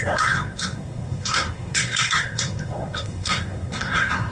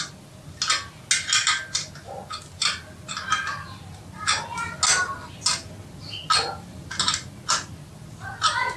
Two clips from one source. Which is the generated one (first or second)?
first